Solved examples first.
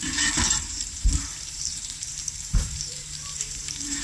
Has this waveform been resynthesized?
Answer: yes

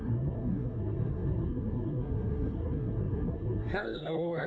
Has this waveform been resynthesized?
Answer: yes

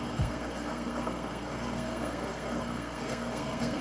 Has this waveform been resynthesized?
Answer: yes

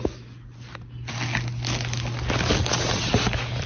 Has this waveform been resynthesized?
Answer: no